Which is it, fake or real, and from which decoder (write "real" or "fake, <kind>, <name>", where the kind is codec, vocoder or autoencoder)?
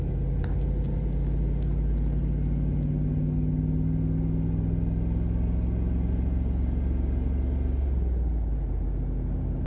real